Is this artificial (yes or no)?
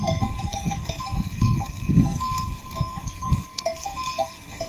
yes